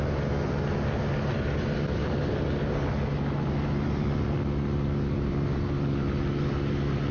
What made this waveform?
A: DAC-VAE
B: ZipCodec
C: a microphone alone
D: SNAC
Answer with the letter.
C